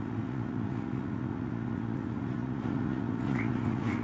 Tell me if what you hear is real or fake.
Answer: fake